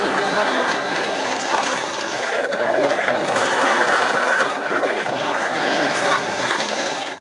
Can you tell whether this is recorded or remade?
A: remade